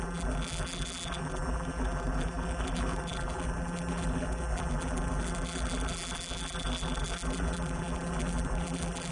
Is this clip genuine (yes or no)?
no